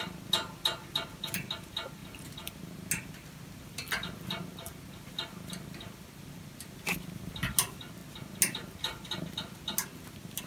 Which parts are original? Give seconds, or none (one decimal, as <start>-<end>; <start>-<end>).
0.0-10.5